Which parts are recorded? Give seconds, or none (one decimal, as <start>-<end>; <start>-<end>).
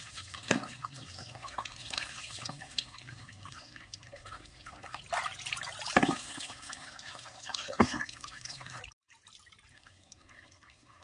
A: 5.0-6.0; 8.8-9.7